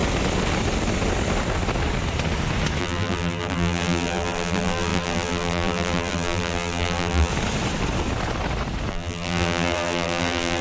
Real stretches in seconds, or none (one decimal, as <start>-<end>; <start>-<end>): 0.0-2.8; 7.3-8.9